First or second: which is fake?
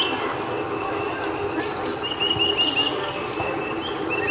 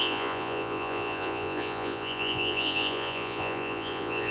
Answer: second